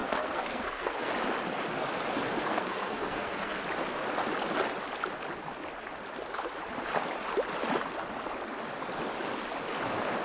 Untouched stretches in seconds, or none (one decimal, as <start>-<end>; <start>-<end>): 1.1-2.4; 3.6-10.2